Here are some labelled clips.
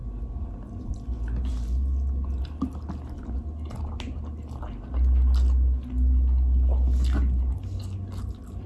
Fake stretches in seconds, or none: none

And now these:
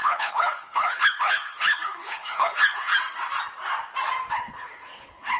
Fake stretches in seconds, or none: 0.0-2.9 (codec, HILCodec); 4.3-5.4

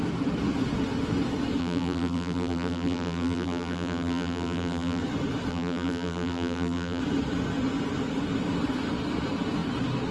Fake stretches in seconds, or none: 1.6-5.0 (vocoder, BigVGAN v2); 5.5-7.0

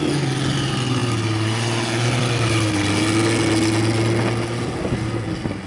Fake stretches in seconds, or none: none

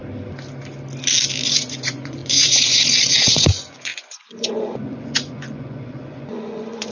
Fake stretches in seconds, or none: 1.4-6.9 (vocoder, Vocos)

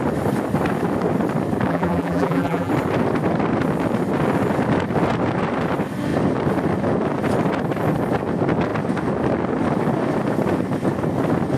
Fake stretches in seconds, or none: 1.7-2.7 (vocoder, BigVGAN v2)

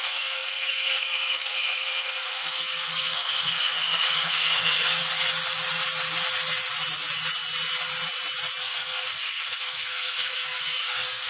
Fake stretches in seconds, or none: 0.0-5.0 (codec, SNAC); 8.6-11.3